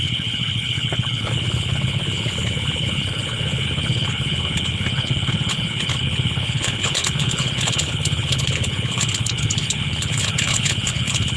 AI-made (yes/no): yes